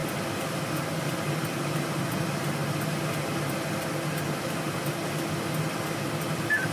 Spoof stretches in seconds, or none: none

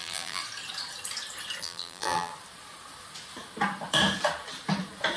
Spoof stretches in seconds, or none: 0.0-0.4 (vocoder, BigVGAN v2); 1.6-2.3